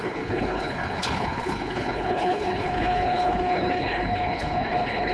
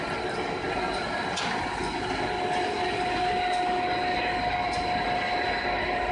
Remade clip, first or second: first